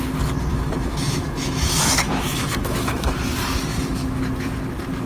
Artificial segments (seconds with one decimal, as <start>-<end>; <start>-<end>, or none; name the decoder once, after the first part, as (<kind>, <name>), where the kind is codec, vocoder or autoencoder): 0.5-3.1 (autoencoder, DAC-VAE); 3.7-4.2